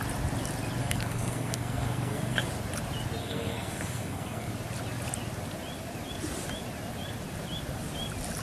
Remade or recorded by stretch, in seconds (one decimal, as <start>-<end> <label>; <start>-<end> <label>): 0.0-0.8 recorded; 0.8-2.5 remade; 2.5-3.2 recorded; 3.2-4.5 remade; 4.5-8.4 recorded